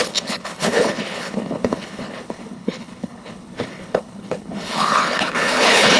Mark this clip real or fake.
fake